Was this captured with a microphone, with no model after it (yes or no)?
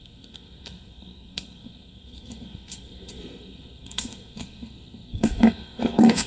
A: no